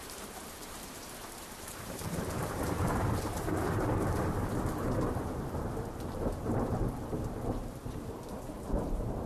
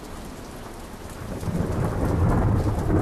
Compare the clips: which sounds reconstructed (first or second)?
first